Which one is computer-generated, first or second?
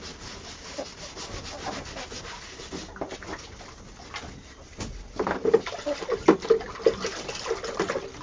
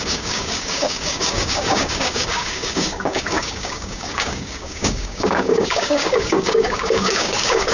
second